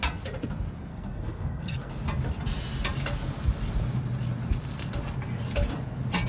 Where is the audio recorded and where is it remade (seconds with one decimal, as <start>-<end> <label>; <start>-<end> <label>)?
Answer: 0.0-0.9 recorded; 0.9-1.9 remade; 1.9-6.3 recorded